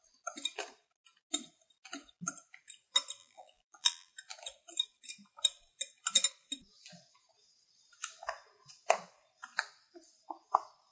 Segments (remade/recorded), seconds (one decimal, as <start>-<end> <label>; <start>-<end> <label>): 0.0-3.2 recorded; 3.2-4.1 remade; 4.1-10.9 recorded